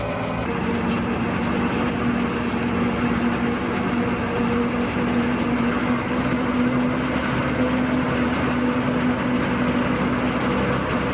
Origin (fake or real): real